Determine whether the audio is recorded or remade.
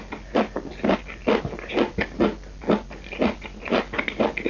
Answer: recorded